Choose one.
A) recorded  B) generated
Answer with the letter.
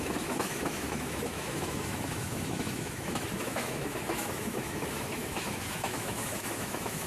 B